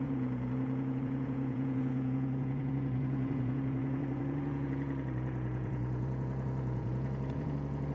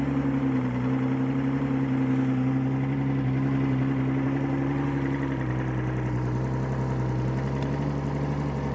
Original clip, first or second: second